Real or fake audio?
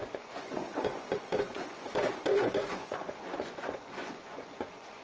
fake